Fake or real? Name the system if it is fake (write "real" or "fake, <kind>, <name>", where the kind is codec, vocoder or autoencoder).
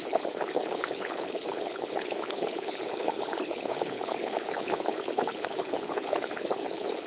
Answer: fake, codec, HILCodec